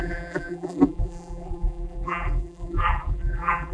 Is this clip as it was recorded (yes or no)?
no